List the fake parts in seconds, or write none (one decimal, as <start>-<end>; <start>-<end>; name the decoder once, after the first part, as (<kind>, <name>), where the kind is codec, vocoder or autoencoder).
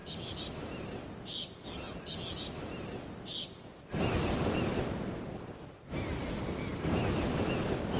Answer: none